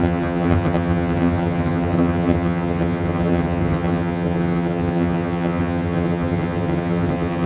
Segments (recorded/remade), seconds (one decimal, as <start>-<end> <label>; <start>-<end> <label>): 0.0-7.5 remade